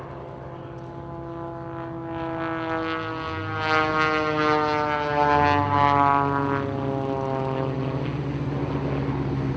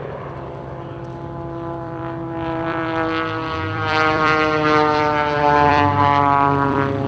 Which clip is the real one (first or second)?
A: first